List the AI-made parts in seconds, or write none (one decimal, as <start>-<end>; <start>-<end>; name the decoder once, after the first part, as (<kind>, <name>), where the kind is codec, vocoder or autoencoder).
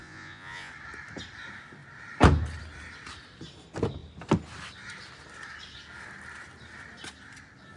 0.0-0.7 (vocoder, Vocos)